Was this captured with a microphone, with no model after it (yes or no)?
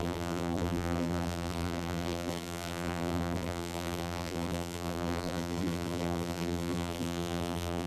no